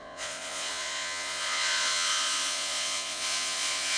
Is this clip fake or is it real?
fake